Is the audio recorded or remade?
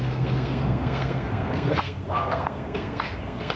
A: remade